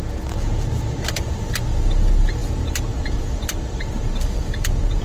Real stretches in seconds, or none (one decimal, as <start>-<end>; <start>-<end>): 0.0-5.0